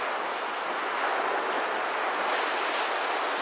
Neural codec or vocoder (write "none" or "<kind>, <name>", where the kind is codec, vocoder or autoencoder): none